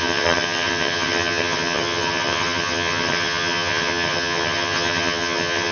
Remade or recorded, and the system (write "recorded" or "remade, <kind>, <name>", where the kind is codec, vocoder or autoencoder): remade, vocoder, HiFi-GAN